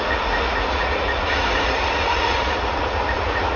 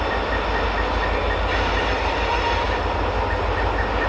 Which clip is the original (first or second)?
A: second